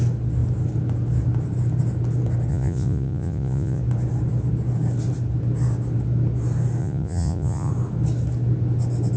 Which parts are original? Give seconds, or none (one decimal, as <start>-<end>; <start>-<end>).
0.0-2.5; 3.8-6.8; 7.7-9.2